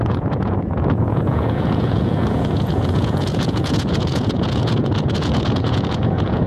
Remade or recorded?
remade